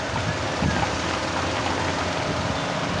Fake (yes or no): no